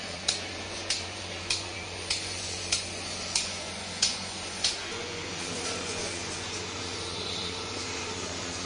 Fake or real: fake